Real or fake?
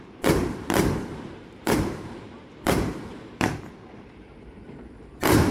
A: fake